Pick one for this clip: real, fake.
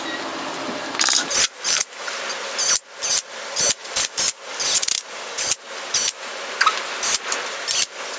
real